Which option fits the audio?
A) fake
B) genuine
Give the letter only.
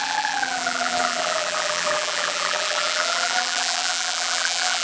A